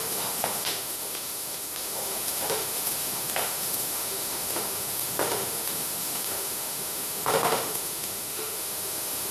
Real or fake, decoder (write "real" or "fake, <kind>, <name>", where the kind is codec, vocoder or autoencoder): fake, autoencoder, DAC-VAE